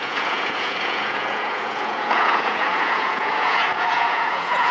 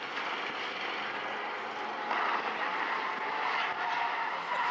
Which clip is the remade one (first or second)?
first